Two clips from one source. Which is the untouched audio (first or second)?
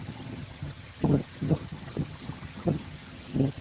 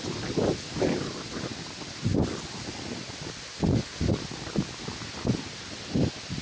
second